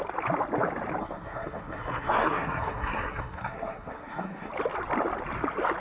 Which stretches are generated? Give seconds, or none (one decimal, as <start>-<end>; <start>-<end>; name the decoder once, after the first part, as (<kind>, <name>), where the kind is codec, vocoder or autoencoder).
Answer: 1.0-4.5 (codec, SNAC)